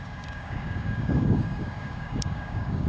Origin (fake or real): fake